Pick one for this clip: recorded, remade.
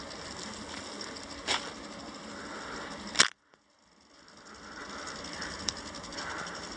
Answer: recorded